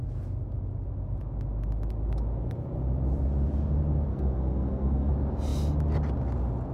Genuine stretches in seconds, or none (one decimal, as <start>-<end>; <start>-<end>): 0.0-4.1; 5.1-6.7